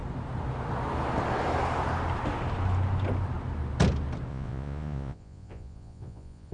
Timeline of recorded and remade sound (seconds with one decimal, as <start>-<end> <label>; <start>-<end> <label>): 0.0-4.3 recorded; 4.3-6.5 remade